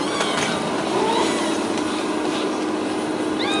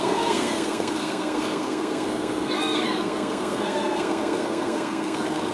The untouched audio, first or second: first